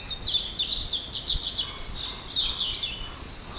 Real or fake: real